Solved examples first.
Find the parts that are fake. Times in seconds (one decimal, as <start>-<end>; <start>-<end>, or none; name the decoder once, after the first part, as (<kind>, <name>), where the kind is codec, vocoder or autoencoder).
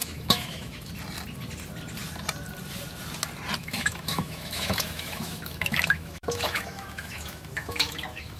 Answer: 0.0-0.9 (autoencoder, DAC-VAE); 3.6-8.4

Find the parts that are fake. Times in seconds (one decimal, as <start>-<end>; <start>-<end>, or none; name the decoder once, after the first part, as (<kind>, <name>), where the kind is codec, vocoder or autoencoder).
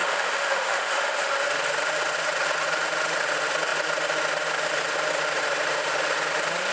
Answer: 0.0-1.3 (autoencoder, DAC-VAE)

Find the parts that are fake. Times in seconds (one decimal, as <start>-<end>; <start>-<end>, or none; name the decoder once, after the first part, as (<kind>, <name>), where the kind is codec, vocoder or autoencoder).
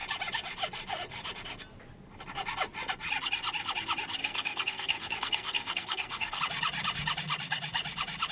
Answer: 4.2-6.4 (codec, SNAC)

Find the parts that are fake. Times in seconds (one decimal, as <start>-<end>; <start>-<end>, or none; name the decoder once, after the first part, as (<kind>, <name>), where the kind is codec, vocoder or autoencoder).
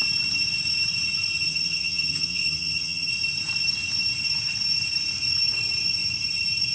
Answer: 1.5-3.1 (vocoder, HiFi-GAN)